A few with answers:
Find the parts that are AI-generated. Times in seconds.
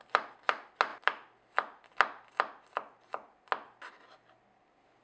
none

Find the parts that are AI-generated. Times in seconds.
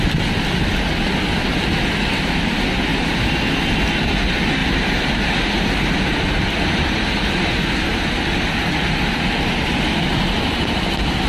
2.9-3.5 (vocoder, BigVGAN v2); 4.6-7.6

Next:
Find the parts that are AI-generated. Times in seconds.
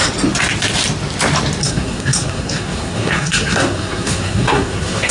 1.6-5.1 (codec, SNAC)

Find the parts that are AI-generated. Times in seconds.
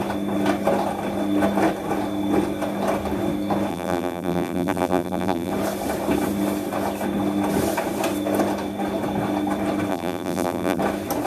3.7-5.5 (vocoder, BigVGAN v2); 9.9-10.8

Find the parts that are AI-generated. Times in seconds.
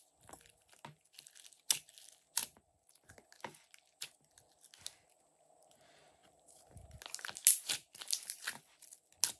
6.2-7.0 (vocoder, BigVGAN v2)